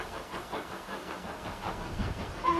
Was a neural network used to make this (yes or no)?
yes